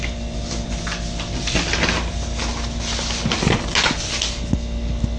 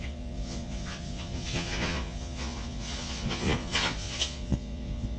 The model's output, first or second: second